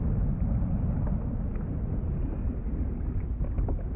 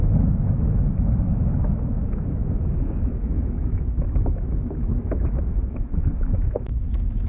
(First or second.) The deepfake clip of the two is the second